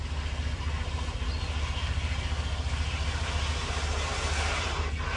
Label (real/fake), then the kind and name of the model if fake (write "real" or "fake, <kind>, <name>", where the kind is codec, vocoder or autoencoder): real